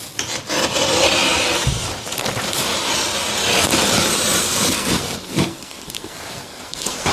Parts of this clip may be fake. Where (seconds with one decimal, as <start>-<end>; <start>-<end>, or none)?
4.4-7.1